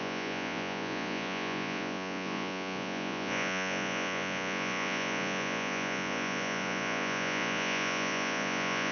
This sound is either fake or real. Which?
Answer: fake